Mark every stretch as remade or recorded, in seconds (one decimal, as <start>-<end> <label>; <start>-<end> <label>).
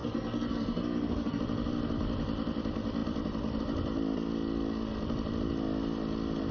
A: 0.0-1.4 remade; 1.4-6.5 recorded